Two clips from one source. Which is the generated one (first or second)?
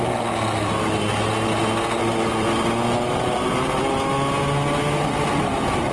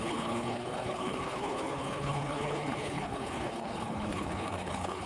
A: second